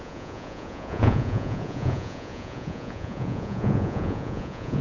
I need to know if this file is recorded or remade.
remade